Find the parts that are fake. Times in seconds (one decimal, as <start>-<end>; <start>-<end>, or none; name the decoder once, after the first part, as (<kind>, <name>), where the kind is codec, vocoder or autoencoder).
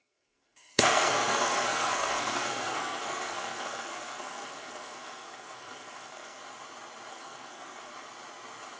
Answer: 0.0-6.4 (codec, SNAC); 7.1-7.9